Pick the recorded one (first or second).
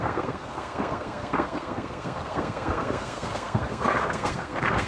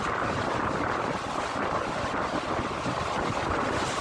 second